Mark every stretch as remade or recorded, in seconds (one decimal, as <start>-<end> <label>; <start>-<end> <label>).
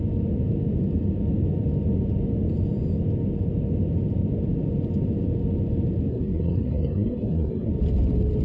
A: 0.0-6.1 recorded; 6.1-7.7 remade; 7.7-8.4 recorded